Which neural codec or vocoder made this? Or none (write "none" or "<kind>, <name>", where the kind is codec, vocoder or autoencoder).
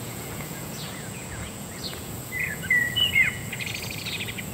vocoder, Vocos